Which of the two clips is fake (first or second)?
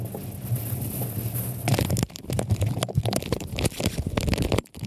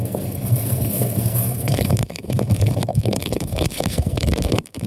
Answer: second